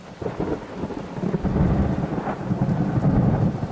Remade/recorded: recorded